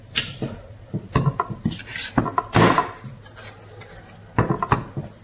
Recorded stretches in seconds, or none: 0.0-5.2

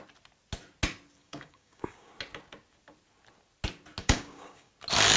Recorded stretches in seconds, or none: 0.0-1.2; 2.1-4.0; 4.7-5.2

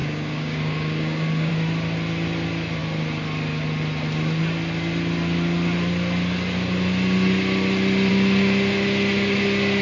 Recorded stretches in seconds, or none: 1.5-9.8

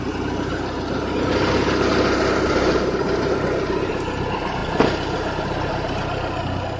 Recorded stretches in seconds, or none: 0.0-6.8